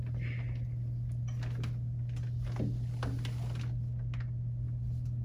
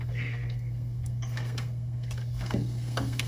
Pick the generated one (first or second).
second